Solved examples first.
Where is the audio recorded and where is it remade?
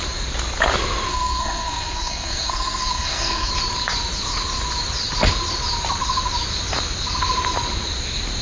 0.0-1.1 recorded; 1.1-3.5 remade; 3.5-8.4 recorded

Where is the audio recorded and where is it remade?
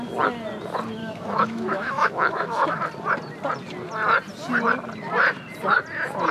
0.0-1.0 recorded; 1.0-2.8 remade; 2.8-6.3 recorded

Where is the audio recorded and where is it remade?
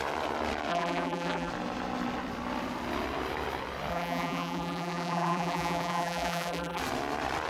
0.0-0.7 recorded; 0.7-1.5 remade; 1.5-3.9 recorded; 3.9-6.8 remade; 6.8-7.5 recorded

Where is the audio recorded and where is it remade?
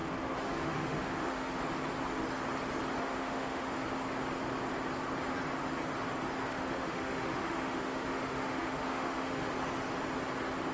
0.0-1.6 remade; 1.6-3.0 recorded; 3.0-3.7 remade; 3.7-6.5 recorded; 6.5-9.5 remade; 9.5-10.7 recorded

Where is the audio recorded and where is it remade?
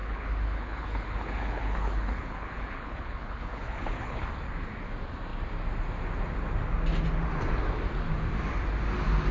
0.0-4.3 remade; 4.3-9.3 recorded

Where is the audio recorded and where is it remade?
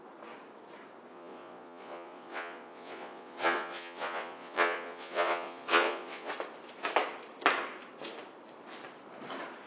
0.0-1.1 recorded; 1.1-6.3 remade; 6.3-9.7 recorded